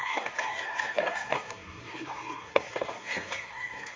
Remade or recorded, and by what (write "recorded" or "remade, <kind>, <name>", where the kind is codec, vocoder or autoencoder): remade, codec, SNAC